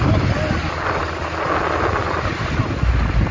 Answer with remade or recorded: recorded